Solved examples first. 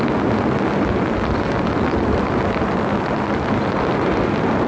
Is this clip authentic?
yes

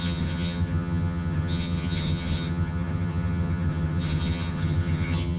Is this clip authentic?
no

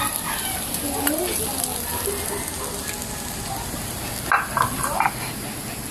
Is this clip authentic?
yes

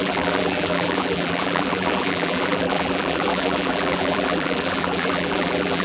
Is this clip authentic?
no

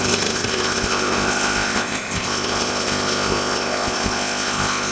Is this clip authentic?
no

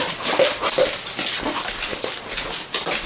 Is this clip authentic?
yes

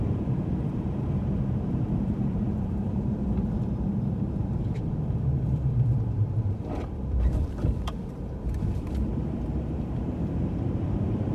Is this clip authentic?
no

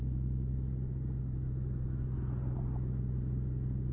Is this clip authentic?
yes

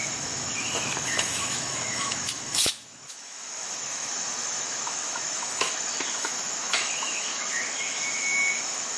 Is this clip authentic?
no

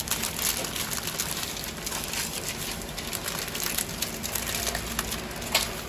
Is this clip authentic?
yes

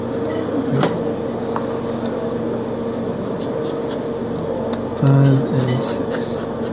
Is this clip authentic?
yes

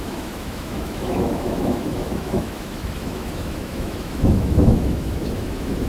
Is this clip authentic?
no